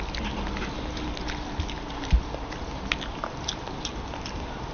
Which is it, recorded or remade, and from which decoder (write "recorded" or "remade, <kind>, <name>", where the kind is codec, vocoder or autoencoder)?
recorded